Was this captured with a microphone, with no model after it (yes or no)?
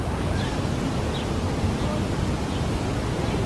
yes